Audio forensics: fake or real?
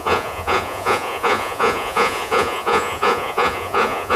fake